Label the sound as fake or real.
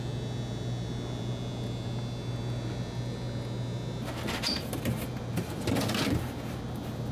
real